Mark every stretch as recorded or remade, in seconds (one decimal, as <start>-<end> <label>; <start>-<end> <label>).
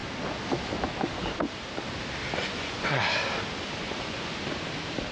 0.0-2.4 recorded; 2.4-3.0 remade; 3.0-3.8 recorded; 3.8-4.4 remade; 4.4-5.1 recorded